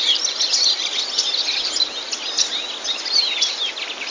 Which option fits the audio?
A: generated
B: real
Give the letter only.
B